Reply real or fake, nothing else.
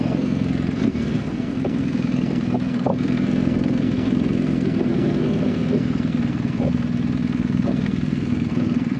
fake